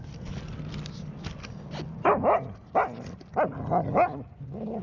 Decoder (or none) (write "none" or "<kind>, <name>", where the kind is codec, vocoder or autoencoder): none